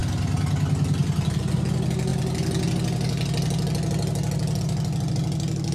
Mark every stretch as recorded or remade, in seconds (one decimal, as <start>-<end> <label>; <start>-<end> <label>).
0.0-5.7 recorded